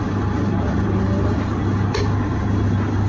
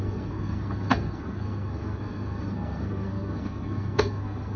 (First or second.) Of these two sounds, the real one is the first